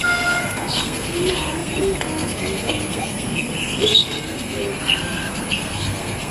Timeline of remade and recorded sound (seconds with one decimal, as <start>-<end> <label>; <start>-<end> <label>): 0.0-6.3 remade